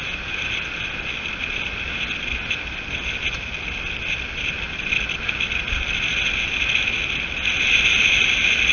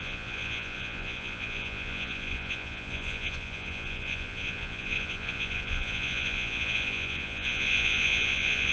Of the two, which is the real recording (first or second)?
first